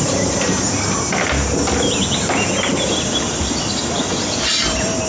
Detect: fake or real real